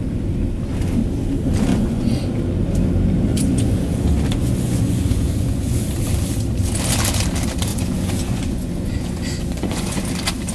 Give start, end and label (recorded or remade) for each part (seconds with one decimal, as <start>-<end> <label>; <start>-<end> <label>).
0.0-1.7 recorded; 1.7-2.2 remade; 2.2-3.3 recorded; 3.3-5.8 remade; 5.8-7.7 recorded; 7.7-10.0 remade; 10.0-10.5 recorded